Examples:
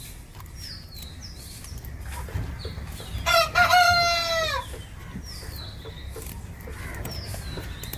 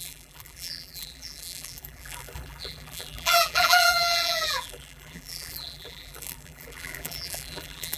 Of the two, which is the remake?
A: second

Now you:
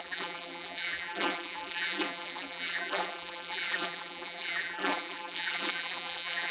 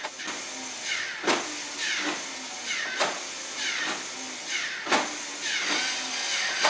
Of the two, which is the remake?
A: first